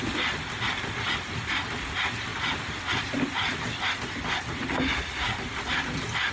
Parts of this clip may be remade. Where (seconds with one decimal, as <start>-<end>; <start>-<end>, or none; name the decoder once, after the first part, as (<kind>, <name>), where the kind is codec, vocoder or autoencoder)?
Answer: none